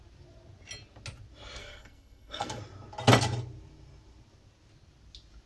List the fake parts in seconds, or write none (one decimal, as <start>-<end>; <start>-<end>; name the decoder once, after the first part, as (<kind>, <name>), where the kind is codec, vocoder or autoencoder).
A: 1.6-2.6 (codec, SNAC)